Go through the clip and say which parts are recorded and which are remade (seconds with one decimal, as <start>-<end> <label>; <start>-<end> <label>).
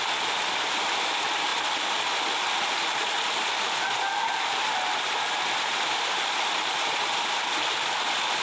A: 0.0-8.4 recorded